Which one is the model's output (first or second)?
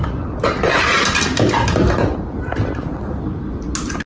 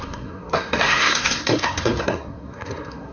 second